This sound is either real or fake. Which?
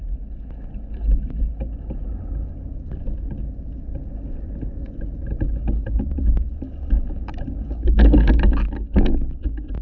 real